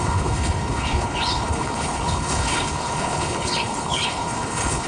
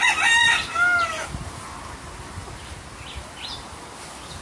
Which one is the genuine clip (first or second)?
second